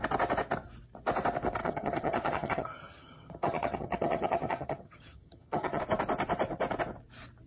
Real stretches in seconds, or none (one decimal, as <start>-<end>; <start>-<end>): 0.0-1.6; 5.8-7.5

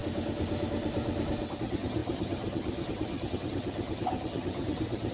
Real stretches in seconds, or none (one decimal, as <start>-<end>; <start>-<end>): 0.0-1.6

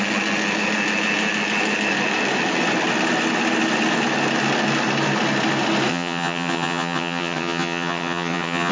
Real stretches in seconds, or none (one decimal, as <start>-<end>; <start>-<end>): 0.0-5.9

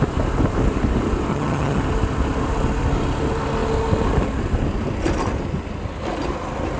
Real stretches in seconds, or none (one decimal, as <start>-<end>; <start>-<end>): 0.0-1.3; 1.8-6.8

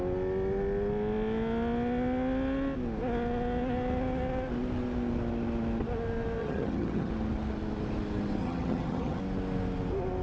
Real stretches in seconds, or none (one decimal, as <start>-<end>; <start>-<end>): 0.0-6.4; 7.1-8.4; 9.2-10.2

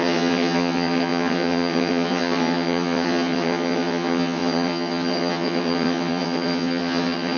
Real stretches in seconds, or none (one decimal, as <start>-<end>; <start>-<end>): none

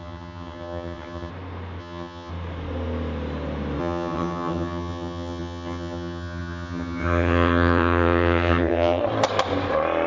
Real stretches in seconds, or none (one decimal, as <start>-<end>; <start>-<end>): 1.3-1.8; 2.3-3.8; 9.0-10.1

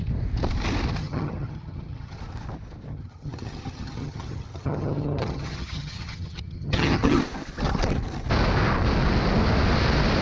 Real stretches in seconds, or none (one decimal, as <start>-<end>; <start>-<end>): 0.0-1.0; 2.2-2.9; 7.2-10.2